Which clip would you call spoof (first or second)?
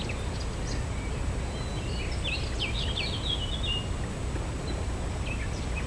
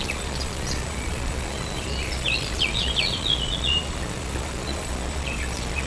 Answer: second